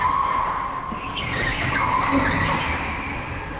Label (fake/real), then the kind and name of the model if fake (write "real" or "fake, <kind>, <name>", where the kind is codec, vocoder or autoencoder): real